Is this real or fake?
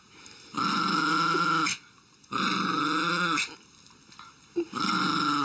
real